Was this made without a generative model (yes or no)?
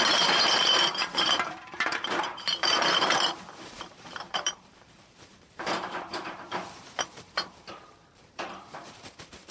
no